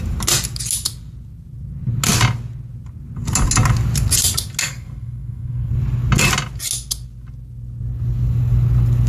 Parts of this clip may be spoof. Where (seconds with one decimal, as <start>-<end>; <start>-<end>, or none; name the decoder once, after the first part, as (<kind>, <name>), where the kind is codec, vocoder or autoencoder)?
4.6-5.7 (codec, SNAC)